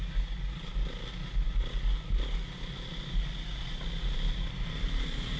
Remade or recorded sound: recorded